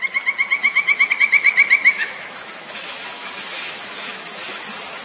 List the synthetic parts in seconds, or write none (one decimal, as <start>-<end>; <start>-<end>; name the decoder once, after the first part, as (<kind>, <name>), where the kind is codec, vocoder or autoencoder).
0.6-1.1 (autoencoder, DAC-VAE); 1.8-5.0